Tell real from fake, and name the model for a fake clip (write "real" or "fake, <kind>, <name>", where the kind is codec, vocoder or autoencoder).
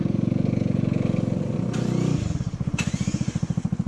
real